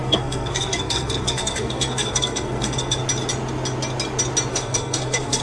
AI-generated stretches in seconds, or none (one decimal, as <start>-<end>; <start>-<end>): 0.0-3.0; 4.5-5.4